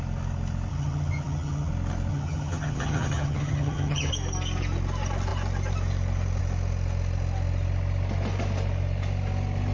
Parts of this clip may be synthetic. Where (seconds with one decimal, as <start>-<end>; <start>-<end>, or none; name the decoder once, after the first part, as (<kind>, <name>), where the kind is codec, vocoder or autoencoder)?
0.7-1.7 (vocoder, HiFi-GAN); 2.1-4.1